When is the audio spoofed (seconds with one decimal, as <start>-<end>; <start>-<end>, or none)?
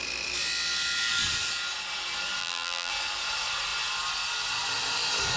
2.4-2.9